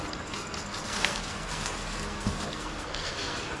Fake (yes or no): yes